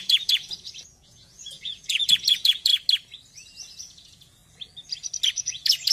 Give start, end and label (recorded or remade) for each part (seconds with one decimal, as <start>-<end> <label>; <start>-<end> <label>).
0.0-2.7 remade; 2.7-3.8 recorded; 3.8-4.4 remade; 4.4-5.3 recorded; 5.3-5.9 remade